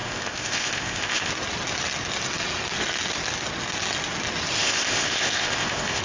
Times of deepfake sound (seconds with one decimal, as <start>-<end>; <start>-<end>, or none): 0.0-1.3; 4.6-6.0

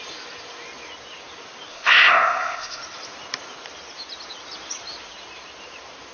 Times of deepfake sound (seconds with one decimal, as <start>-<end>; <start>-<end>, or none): 1.7-2.8

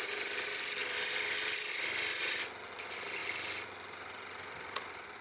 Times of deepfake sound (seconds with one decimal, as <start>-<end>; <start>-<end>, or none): none

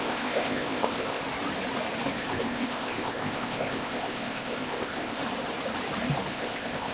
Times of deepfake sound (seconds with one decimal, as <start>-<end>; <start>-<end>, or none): 0.0-1.2; 2.2-5.2; 6.3-6.9

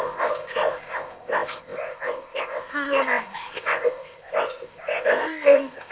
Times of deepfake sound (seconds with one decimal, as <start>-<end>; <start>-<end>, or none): 0.0-5.9

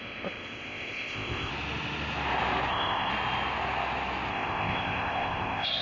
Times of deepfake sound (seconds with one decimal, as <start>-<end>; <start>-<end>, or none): 0.0-1.5; 2.7-3.1; 4.3-5.8